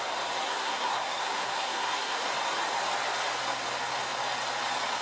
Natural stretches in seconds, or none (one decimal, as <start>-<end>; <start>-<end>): 0.0-0.4; 2.3-5.0